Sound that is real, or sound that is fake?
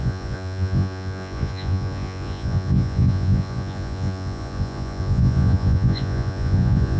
fake